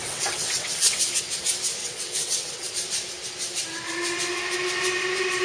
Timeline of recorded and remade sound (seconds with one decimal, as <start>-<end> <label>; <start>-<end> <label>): 0.0-1.0 remade; 1.0-1.8 recorded; 1.8-2.7 remade; 2.7-5.4 recorded